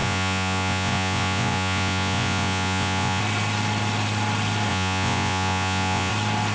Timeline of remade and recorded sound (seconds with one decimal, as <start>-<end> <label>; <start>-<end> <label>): 0.0-3.2 remade; 3.2-4.7 recorded; 4.7-6.1 remade; 6.1-6.5 recorded

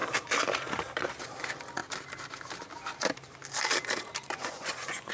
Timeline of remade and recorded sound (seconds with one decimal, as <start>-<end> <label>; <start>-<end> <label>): 0.0-4.2 recorded; 4.2-5.1 remade

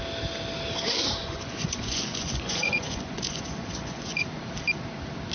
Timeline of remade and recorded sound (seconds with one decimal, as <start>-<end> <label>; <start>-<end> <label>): 0.0-1.2 recorded; 1.2-4.4 remade; 4.4-5.3 recorded

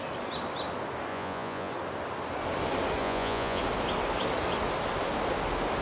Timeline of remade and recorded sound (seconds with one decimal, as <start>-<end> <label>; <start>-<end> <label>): 0.0-1.1 recorded; 1.1-1.7 remade; 1.7-3.0 recorded; 3.0-3.6 remade; 3.6-5.8 recorded

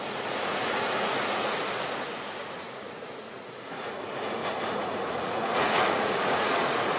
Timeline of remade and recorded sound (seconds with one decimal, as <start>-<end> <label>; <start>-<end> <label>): 0.0-7.0 remade

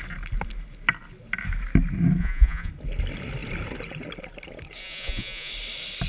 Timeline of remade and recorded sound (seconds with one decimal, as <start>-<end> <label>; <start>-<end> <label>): 0.0-2.2 recorded; 2.2-2.7 remade; 2.7-4.8 recorded; 4.8-5.5 remade; 5.5-6.1 recorded

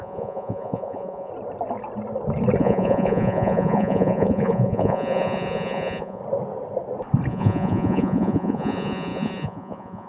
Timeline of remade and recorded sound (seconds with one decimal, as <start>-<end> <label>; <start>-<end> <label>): 0.0-1.3 remade; 1.3-2.6 recorded; 2.6-6.2 remade; 6.2-7.3 recorded; 7.3-10.1 remade